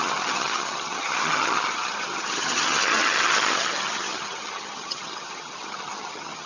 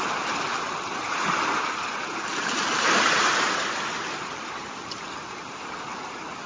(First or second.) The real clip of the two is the second